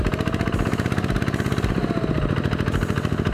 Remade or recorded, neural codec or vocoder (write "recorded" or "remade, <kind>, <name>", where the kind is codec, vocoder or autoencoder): recorded